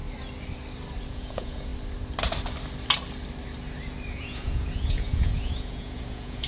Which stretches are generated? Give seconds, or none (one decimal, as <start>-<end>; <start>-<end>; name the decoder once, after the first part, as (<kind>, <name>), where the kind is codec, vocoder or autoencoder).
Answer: 1.1-1.7 (vocoder, Vocos); 4.1-6.5